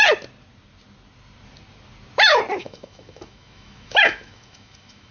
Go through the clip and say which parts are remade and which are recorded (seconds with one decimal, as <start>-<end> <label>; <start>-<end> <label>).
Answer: 0.0-2.6 recorded; 2.6-5.1 remade